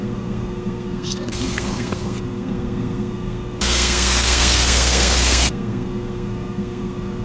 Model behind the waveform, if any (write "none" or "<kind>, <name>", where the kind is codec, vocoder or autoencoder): codec, SNAC